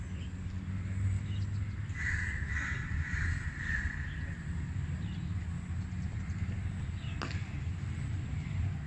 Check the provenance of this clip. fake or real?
real